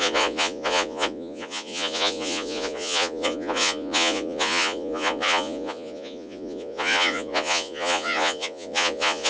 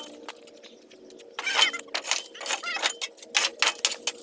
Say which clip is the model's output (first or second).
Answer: first